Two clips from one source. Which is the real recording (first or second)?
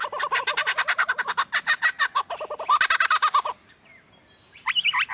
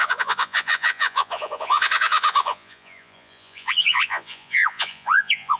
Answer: first